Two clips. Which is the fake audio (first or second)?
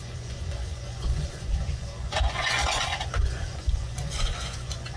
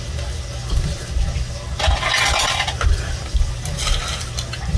first